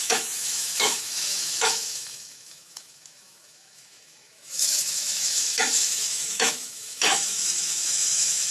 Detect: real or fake fake